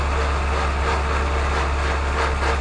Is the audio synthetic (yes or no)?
no